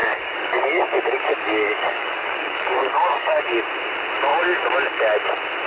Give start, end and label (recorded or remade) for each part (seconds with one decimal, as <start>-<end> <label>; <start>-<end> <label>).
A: 0.0-3.4 remade; 3.4-5.7 recorded